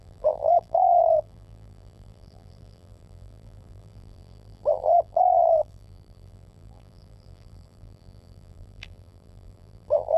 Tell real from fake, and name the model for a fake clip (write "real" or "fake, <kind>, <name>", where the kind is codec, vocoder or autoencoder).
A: fake, vocoder, BigVGAN v2